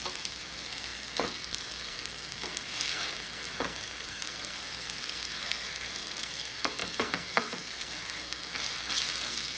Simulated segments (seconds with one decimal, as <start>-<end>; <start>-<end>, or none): 0.0-9.6